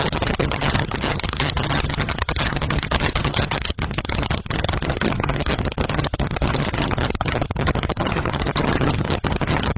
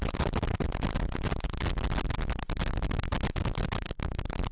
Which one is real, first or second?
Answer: second